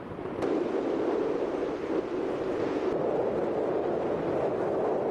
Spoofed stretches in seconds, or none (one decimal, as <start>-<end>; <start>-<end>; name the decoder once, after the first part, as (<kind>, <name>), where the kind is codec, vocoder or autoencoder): none